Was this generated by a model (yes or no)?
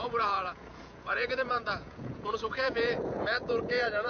yes